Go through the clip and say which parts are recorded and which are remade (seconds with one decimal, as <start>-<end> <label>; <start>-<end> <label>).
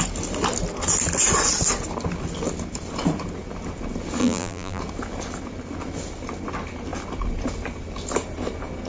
0.0-4.2 recorded; 4.2-4.8 remade; 4.8-8.9 recorded